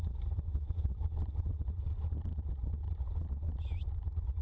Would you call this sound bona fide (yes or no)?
yes